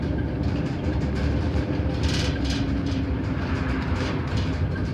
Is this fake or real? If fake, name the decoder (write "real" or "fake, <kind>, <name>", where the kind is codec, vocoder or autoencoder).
fake, vocoder, BigVGAN v2